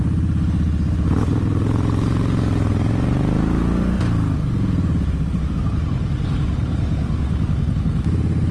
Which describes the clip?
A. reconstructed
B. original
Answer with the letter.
B